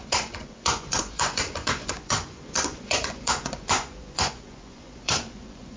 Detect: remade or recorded remade